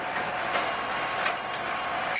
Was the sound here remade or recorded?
recorded